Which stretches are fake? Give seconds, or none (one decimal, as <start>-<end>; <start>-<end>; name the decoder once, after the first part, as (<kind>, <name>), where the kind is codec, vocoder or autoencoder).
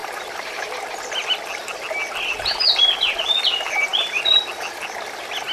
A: 0.0-0.6 (vocoder, BigVGAN v2)